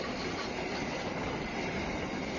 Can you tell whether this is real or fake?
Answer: real